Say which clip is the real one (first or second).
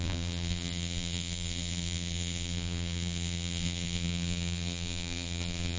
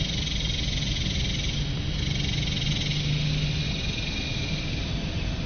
second